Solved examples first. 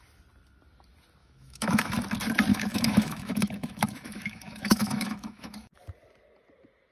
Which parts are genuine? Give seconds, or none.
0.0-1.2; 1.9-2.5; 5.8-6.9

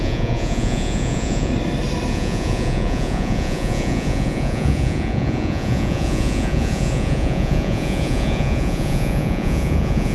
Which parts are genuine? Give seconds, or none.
1.5-2.1

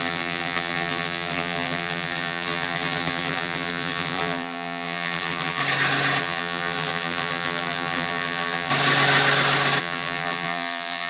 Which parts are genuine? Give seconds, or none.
5.6-6.2; 8.7-9.8